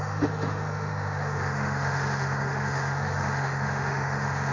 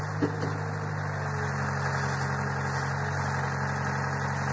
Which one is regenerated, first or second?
first